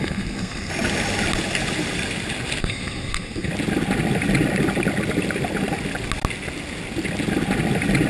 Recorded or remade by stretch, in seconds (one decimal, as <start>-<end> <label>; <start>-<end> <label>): 0.0-0.7 remade; 0.7-2.6 recorded; 2.6-3.5 remade; 3.5-8.1 recorded